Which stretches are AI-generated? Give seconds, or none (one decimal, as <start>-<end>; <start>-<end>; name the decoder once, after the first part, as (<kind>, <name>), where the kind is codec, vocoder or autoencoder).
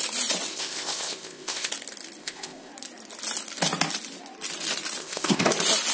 0.5-1.7 (codec, ZipCodec); 2.2-2.7; 5.0-5.5